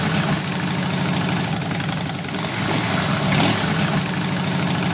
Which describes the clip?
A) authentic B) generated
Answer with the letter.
A